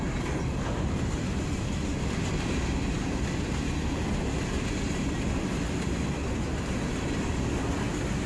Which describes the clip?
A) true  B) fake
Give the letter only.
A